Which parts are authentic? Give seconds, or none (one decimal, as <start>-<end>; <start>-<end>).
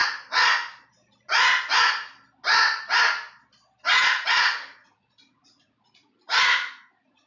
0.0-4.0